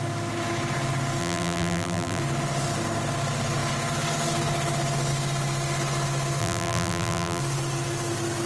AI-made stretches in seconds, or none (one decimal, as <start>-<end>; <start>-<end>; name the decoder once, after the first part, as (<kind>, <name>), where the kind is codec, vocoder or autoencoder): 1.2-2.2 (vocoder, BigVGAN v2); 6.4-7.4